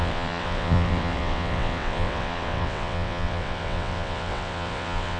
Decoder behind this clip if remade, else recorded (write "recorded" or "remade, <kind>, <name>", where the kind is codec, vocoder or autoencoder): remade, vocoder, WaveNeXt